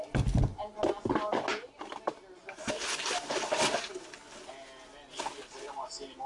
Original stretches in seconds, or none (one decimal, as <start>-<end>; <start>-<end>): 0.0-6.3